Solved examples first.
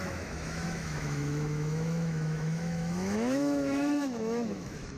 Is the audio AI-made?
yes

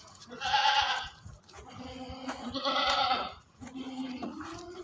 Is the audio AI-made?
yes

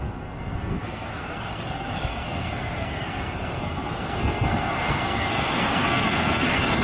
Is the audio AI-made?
yes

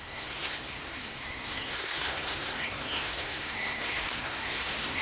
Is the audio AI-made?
yes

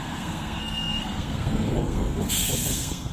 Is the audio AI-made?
yes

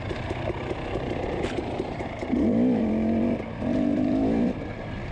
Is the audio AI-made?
yes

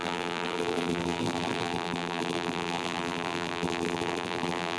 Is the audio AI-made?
yes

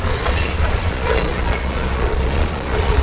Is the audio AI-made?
yes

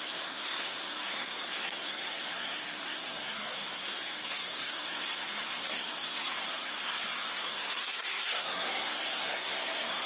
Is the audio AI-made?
yes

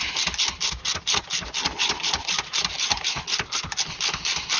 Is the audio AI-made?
no